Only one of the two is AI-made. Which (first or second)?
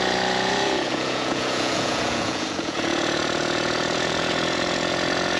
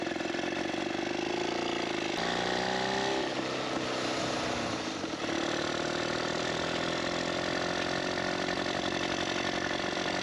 first